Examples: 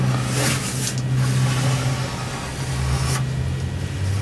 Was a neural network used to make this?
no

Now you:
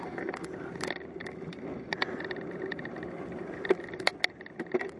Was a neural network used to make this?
no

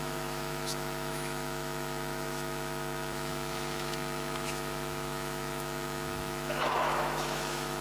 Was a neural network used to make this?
yes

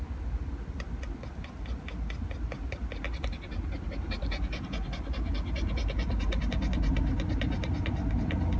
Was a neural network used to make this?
no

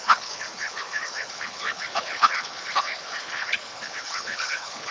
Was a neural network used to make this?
yes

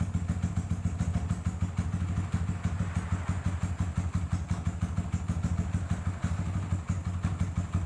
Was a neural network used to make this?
no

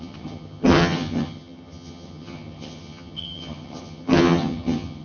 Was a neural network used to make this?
yes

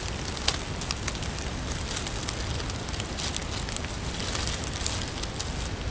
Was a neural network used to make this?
no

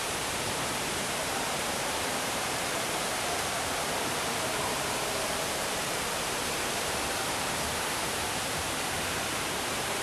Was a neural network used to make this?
yes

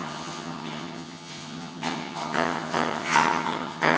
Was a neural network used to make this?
yes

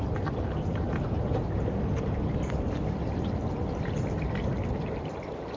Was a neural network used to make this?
yes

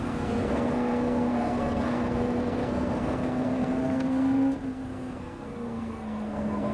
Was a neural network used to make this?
yes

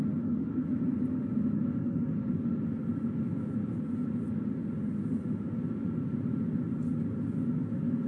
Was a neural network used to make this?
no